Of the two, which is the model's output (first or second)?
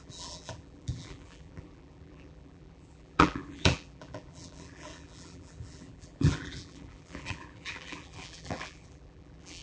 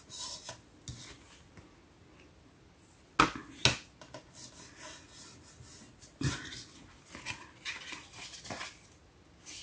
first